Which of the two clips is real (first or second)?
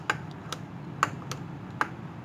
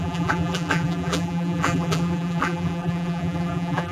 first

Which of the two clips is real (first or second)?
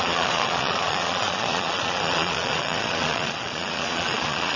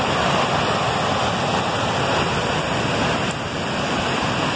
second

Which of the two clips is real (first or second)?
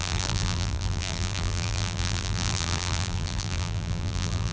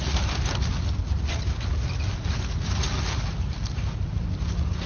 second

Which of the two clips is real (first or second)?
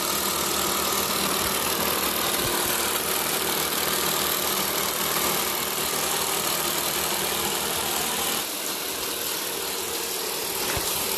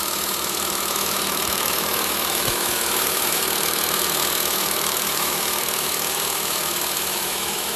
first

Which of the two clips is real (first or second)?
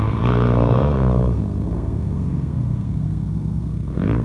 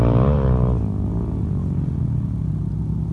second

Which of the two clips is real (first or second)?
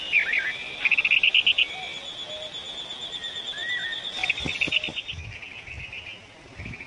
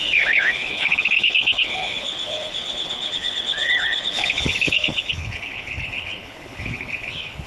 first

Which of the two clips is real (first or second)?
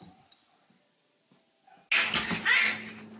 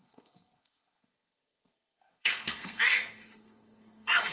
first